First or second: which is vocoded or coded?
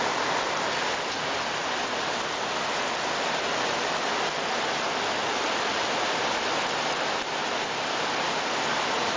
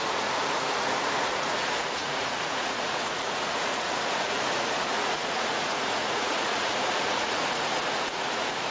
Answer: second